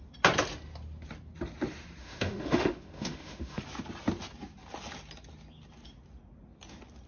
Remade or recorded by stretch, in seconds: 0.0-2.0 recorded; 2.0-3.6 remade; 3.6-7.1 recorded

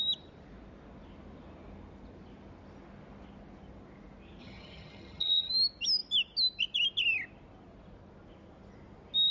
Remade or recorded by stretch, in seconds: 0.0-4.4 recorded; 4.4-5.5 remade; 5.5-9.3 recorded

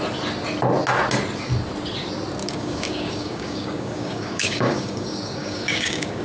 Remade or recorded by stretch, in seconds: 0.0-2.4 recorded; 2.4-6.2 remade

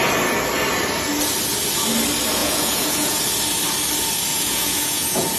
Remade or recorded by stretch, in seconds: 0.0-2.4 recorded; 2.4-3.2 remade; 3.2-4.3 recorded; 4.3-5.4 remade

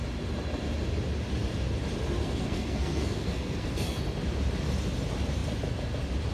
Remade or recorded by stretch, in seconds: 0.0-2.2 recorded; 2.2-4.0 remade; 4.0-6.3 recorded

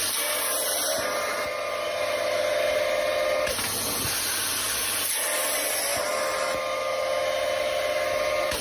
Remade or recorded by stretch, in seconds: 0.0-8.6 recorded

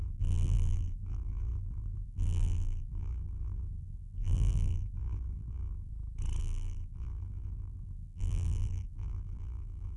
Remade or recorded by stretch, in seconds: 0.0-5.9 remade; 5.9-6.4 recorded; 6.4-10.0 remade

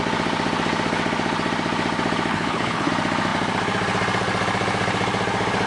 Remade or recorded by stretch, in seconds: 0.0-2.3 recorded; 2.3-2.9 remade; 2.9-5.7 recorded